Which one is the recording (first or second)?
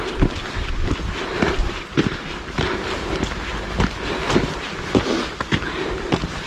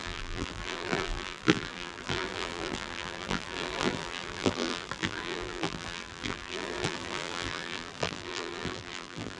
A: first